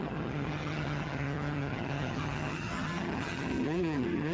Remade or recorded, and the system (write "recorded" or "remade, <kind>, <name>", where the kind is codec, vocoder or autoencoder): remade, vocoder, HiFi-GAN